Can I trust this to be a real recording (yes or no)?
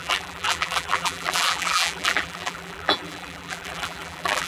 no